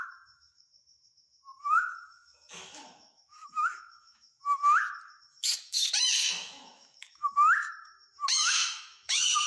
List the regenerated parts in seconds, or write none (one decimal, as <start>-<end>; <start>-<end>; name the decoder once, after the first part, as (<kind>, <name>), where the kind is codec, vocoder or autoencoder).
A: 0.0-4.6 (autoencoder, DAC-VAE); 5.2-9.5